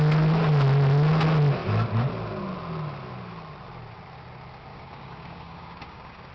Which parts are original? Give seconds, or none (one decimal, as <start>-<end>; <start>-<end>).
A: 0.0-4.7